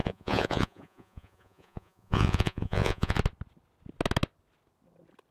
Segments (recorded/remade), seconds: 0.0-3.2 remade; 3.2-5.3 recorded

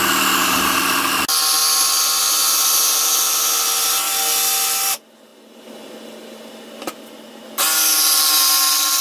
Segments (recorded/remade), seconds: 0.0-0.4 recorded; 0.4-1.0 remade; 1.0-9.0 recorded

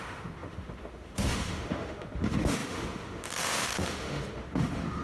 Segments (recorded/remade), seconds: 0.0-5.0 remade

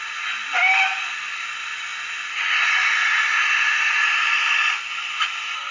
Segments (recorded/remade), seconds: 0.0-5.7 recorded